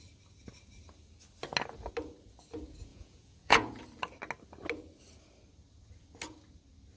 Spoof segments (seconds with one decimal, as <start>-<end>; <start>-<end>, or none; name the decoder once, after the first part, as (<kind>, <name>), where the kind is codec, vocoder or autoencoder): 2.9-3.8 (vocoder, Vocos)